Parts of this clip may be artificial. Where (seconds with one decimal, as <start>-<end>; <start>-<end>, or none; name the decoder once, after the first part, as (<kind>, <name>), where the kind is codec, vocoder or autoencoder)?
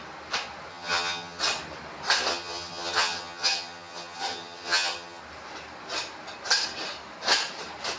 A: 0.7-1.4 (vocoder, HiFi-GAN); 2.3-5.2